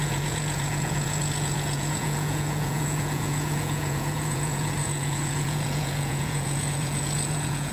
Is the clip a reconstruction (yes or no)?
yes